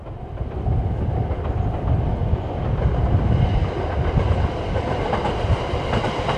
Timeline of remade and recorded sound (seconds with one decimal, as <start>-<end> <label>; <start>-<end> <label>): 0.0-6.4 recorded